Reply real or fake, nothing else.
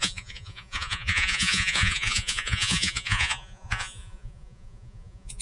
fake